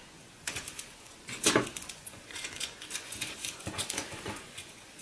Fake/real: fake